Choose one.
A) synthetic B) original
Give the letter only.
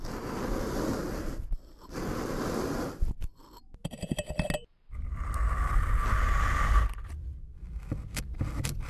B